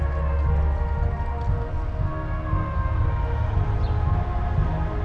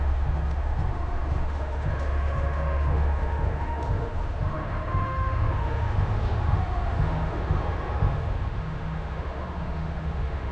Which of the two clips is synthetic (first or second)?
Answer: second